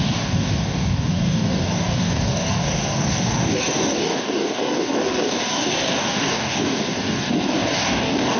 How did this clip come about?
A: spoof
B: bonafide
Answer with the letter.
A